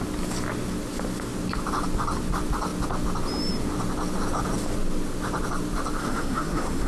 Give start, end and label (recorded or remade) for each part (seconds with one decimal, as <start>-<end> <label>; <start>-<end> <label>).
0.0-6.0 recorded; 6.0-6.9 remade